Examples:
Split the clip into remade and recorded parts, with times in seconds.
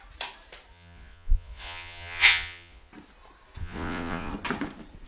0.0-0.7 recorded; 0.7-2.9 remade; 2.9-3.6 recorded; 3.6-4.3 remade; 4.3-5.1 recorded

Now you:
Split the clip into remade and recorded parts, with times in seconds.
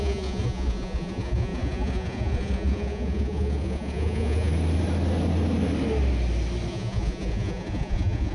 0.0-4.5 remade; 4.5-6.7 recorded; 6.7-8.3 remade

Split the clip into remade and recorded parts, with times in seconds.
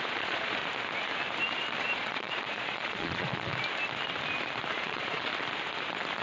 0.0-0.6 remade; 0.6-1.8 recorded; 1.8-3.5 remade; 3.5-4.7 recorded; 4.7-5.3 remade; 5.3-6.2 recorded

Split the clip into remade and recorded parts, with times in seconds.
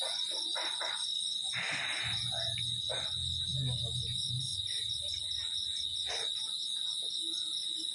0.0-7.9 recorded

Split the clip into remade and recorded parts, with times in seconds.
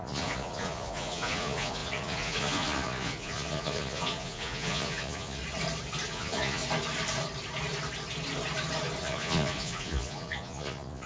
0.0-5.4 remade; 5.4-6.1 recorded; 6.1-6.6 remade; 6.6-9.0 recorded; 9.0-11.1 remade